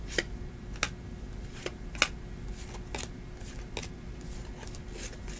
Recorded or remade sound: recorded